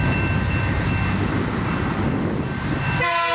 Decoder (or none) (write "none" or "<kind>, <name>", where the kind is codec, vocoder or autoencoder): none